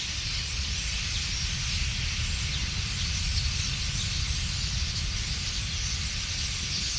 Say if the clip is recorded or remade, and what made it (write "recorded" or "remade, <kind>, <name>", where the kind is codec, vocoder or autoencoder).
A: recorded